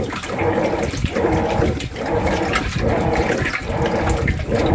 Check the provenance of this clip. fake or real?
real